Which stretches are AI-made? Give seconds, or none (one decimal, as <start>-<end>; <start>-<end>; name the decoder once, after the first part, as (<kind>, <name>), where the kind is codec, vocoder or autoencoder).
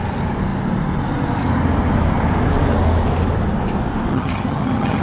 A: 4.1-5.0 (vocoder, HiFi-GAN)